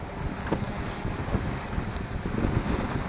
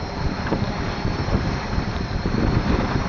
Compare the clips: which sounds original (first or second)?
first